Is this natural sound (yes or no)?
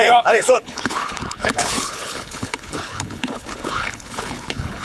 no